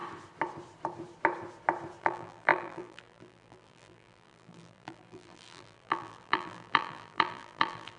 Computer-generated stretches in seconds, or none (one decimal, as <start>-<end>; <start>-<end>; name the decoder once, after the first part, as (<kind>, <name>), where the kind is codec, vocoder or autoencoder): 2.0-8.0 (vocoder, BigVGAN v2)